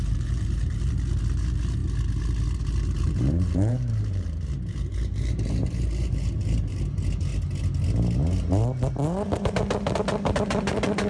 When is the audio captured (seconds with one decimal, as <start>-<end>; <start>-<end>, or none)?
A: 1.8-2.6; 7.3-11.1